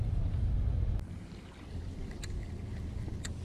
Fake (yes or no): no